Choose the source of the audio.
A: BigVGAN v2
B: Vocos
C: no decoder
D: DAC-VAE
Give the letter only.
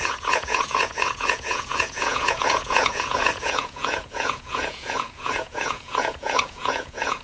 B